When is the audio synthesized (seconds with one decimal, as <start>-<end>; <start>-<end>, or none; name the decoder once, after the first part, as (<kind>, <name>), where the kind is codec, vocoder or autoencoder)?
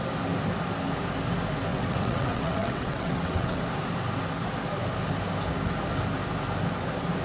1.7-3.6 (vocoder, WaveNeXt)